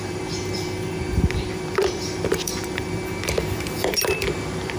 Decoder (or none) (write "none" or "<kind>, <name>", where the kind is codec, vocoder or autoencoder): vocoder, BigVGAN v2